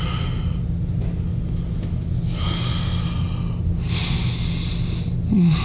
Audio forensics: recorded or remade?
recorded